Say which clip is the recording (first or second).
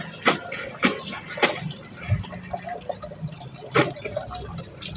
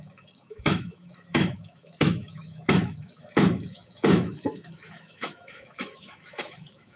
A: first